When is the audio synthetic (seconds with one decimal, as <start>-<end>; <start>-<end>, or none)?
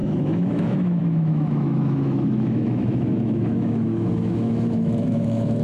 0.0-5.6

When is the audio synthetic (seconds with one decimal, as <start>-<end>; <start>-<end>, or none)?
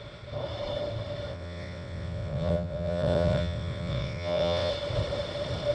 1.3-4.7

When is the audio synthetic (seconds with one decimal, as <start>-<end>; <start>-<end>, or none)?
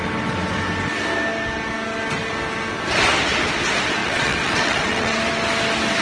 4.0-5.2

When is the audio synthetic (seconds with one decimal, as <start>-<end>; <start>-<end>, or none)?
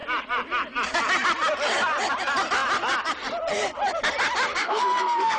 4.6-5.4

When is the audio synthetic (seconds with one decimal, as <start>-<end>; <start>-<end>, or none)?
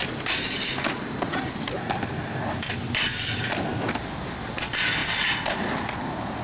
none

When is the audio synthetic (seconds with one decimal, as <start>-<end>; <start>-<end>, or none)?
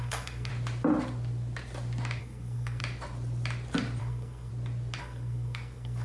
0.0-0.5; 2.2-2.8; 4.0-4.5; 5.0-6.0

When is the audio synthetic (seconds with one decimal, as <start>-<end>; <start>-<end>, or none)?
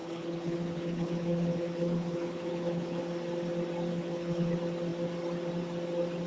0.0-3.0; 3.9-4.5